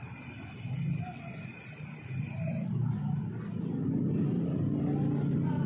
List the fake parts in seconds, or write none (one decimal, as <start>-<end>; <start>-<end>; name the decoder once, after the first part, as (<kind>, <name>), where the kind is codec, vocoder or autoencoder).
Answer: none